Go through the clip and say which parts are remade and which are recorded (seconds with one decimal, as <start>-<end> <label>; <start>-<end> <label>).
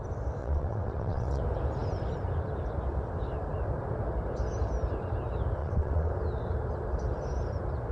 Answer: 0.0-0.4 recorded; 0.4-1.4 remade; 1.4-5.6 recorded; 5.6-6.1 remade; 6.1-7.9 recorded